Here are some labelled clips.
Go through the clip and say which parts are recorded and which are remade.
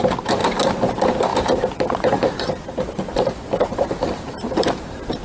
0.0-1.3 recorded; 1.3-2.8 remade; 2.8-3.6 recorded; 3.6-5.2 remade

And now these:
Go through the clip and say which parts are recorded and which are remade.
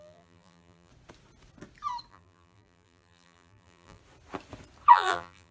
0.0-0.9 remade; 0.9-2.1 recorded; 2.1-4.0 remade; 4.0-4.9 recorded; 4.9-5.5 remade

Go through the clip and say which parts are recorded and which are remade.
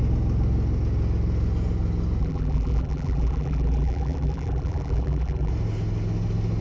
0.0-2.2 recorded; 2.2-5.5 remade; 5.5-6.6 recorded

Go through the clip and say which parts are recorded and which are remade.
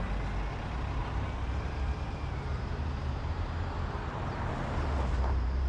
0.0-1.0 recorded; 1.0-4.4 remade; 4.4-5.7 recorded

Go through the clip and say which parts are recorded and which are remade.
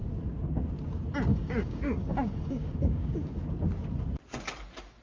0.0-1.3 recorded; 1.3-3.4 remade; 3.4-5.0 recorded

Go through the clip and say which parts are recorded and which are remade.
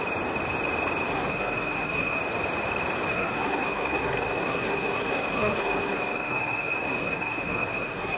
0.0-1.1 recorded; 1.1-2.2 remade; 2.2-3.1 recorded; 3.1-8.2 remade